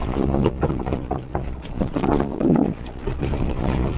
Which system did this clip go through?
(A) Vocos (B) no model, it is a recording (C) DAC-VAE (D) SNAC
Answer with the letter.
A